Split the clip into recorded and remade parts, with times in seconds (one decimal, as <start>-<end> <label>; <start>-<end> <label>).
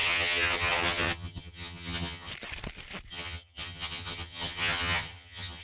0.0-2.3 remade; 2.3-3.1 recorded; 3.1-5.6 remade